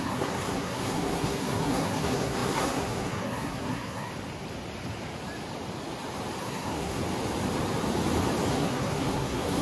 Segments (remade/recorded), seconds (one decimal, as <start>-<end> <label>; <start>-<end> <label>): 0.0-4.1 remade; 4.1-6.4 recorded; 6.4-7.0 remade; 7.0-8.5 recorded; 8.5-9.6 remade